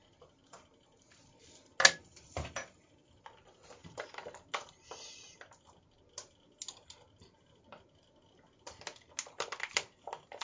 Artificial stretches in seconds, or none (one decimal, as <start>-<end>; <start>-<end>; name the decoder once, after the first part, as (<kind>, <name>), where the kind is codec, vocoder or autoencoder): 3.8-4.3 (vocoder, BigVGAN v2)